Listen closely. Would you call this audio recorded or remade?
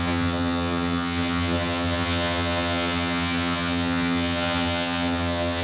remade